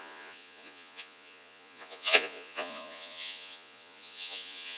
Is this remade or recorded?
remade